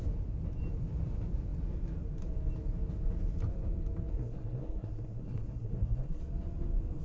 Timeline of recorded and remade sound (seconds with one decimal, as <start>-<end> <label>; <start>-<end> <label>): 0.0-4.1 recorded; 4.1-6.2 remade; 6.2-7.0 recorded